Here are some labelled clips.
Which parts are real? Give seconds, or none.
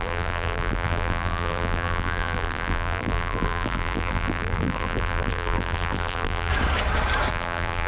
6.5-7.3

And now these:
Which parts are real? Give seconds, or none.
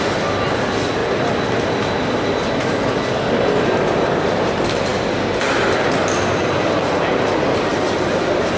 0.0-8.6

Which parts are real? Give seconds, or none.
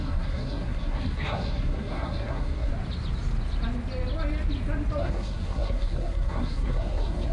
2.7-5.0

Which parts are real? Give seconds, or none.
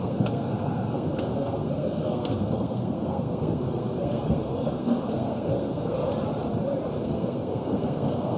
6.0-7.0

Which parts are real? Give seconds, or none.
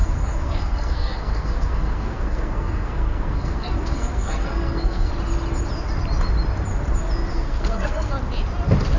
5.1-7.3; 8.1-9.0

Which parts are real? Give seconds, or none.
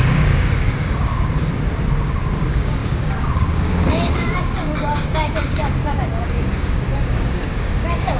1.1-2.1